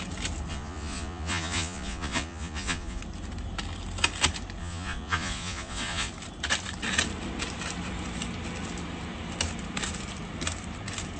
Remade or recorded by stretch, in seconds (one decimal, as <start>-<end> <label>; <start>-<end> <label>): 0.0-0.5 recorded; 0.5-3.0 remade; 3.0-4.6 recorded; 4.6-6.1 remade; 6.1-11.2 recorded